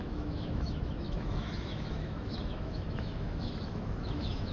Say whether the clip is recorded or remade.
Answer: remade